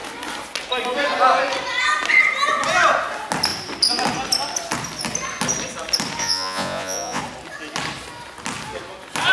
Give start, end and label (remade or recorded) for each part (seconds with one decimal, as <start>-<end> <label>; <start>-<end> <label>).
0.0-6.2 recorded; 6.2-7.2 remade; 7.2-9.3 recorded